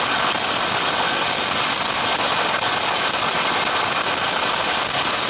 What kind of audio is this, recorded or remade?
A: recorded